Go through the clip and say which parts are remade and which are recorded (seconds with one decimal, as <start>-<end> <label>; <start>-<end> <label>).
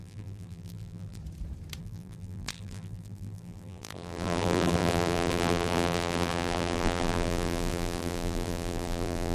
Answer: 0.0-1.2 remade; 1.2-1.8 recorded; 1.8-9.3 remade